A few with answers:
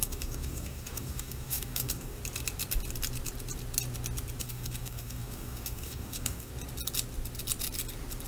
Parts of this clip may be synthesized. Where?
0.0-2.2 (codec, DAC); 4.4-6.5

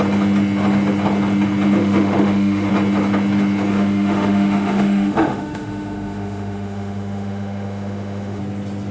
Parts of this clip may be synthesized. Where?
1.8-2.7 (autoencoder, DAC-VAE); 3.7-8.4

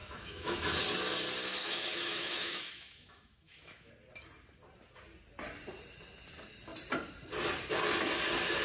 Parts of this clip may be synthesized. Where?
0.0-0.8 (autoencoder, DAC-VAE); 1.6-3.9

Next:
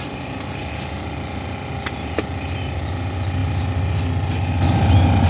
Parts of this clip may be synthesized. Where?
none

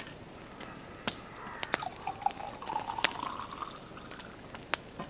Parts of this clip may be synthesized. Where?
none

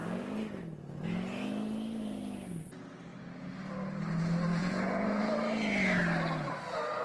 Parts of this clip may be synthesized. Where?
4.5-5.2 (vocoder, Vocos)

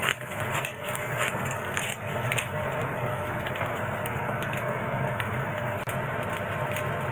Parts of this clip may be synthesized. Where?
0.0-5.8 (codec, SNAC)